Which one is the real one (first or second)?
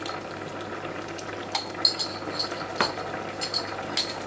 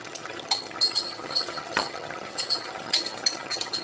first